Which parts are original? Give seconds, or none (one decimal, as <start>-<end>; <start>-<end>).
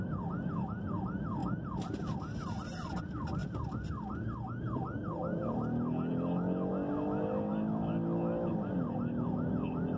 0.0-10.0